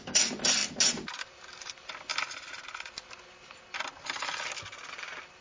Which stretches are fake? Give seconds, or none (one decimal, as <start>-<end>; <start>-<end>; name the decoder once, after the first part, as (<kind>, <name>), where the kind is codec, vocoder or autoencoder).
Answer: 0.0-0.6 (vocoder, BigVGAN v2); 1.2-2.1; 4.9-5.4